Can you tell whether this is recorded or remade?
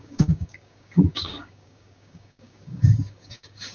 remade